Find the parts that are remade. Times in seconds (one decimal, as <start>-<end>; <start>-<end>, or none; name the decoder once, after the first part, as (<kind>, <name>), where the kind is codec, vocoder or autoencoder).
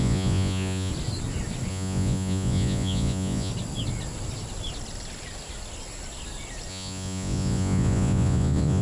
0.0-0.9 (vocoder, Vocos); 1.7-3.5; 6.7-8.8